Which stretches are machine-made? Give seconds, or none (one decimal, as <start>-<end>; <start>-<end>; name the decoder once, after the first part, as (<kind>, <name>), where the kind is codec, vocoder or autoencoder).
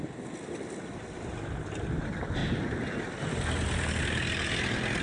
none